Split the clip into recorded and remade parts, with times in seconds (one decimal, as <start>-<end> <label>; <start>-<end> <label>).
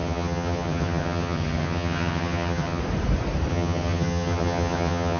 0.0-2.8 remade; 2.8-3.5 recorded; 3.5-5.2 remade